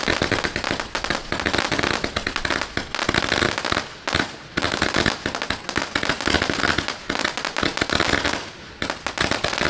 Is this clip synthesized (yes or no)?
no